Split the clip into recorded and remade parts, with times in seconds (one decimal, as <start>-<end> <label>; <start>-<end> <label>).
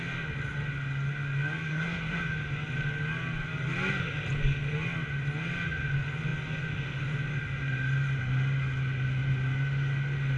0.0-1.7 recorded; 1.7-2.2 remade; 2.2-10.4 recorded